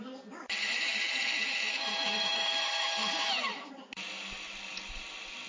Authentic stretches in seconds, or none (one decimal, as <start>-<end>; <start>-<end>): 0.0-0.6; 3.7-5.5